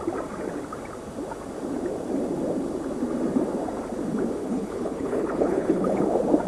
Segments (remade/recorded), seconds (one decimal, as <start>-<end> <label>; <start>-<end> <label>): 0.0-4.4 recorded; 4.4-6.0 remade; 6.0-6.5 recorded